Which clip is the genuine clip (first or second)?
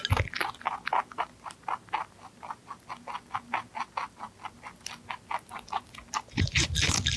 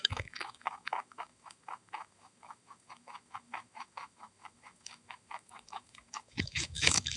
first